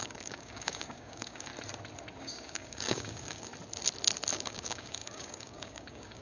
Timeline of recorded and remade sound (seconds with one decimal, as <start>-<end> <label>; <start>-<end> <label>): 0.0-1.5 remade; 1.5-2.2 recorded; 2.2-3.5 remade; 3.5-4.3 recorded; 4.3-6.2 remade